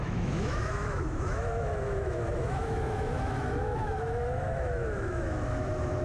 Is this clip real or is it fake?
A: fake